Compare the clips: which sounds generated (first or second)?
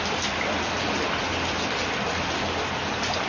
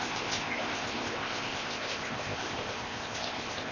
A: second